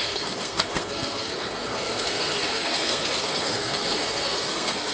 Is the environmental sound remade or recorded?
remade